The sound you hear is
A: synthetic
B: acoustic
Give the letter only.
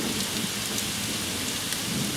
B